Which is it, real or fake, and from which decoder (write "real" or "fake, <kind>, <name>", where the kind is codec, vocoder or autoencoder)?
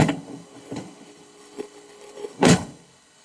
fake, codec, HILCodec